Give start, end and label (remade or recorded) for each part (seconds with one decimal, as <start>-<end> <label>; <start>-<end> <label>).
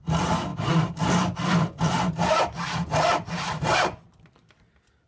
0.0-5.1 recorded